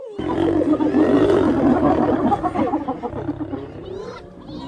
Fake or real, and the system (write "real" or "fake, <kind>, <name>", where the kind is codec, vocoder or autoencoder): real